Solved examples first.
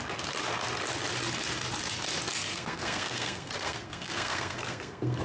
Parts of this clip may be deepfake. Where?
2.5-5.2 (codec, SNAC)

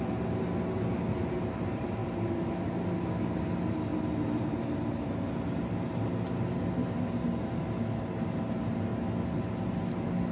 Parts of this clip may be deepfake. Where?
none